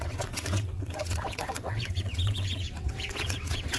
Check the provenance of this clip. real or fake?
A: fake